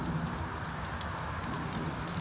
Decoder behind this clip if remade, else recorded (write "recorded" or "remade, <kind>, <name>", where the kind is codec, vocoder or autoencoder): recorded